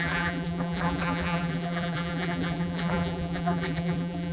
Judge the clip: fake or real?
fake